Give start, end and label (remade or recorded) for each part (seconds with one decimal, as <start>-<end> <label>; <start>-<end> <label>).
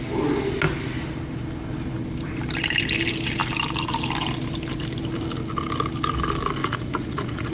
0.0-6.6 recorded; 6.6-7.5 remade